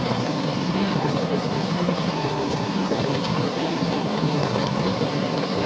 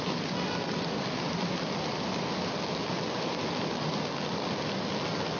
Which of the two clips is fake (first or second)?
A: first